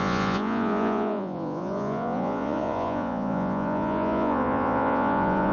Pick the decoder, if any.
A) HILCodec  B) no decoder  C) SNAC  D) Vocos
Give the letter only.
D